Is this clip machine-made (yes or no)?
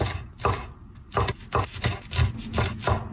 no